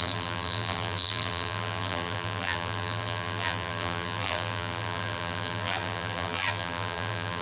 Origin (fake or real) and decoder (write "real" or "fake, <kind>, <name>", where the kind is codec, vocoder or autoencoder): fake, vocoder, BigVGAN v2